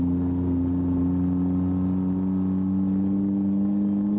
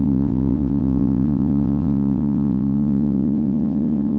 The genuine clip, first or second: first